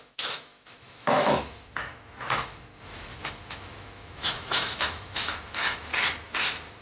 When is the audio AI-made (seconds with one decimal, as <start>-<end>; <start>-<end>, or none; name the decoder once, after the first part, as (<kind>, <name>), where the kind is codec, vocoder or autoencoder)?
0.0-5.9 (autoencoder, DAC-VAE)